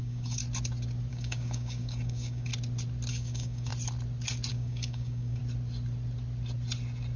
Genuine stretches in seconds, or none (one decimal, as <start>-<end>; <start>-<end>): 0.4-1.1; 2.5-3.1; 3.7-4.5; 5.4-7.2